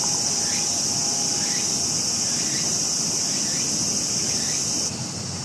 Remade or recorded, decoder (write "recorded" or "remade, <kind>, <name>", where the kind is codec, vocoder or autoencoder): recorded